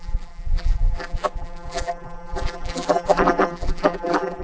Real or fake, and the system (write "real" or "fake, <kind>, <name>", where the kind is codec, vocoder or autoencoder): fake, vocoder, BigVGAN v2